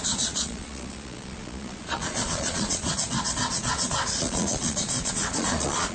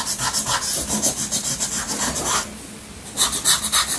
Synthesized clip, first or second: first